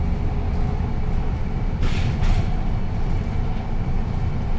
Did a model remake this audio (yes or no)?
no